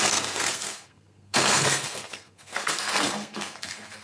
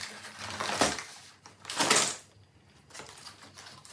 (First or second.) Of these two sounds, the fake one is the first